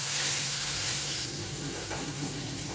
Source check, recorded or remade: remade